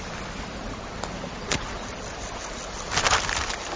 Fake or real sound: real